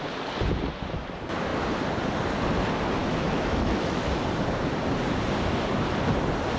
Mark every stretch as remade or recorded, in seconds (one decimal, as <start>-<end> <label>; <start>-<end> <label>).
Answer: 0.0-3.0 recorded; 3.0-4.1 remade; 4.1-6.6 recorded